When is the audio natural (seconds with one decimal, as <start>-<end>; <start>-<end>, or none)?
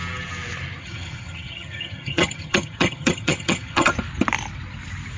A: 0.0-0.8; 3.9-5.2